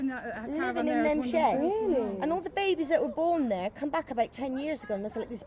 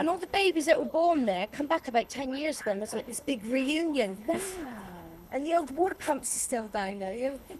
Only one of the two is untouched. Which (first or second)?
first